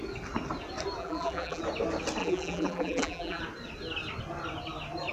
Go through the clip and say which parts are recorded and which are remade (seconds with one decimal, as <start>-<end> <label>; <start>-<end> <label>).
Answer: 0.0-1.0 recorded; 1.0-1.6 remade; 1.6-2.2 recorded; 2.2-3.4 remade; 3.4-5.1 recorded